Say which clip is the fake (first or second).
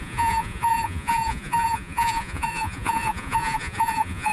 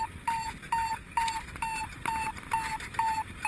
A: first